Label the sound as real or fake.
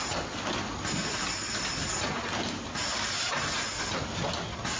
real